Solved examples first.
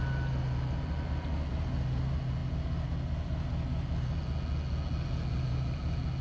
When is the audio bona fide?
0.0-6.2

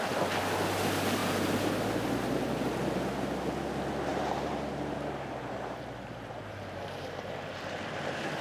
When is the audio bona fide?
0.0-4.1; 7.5-8.4

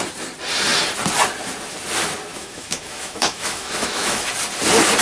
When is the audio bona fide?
0.0-2.3; 4.3-5.0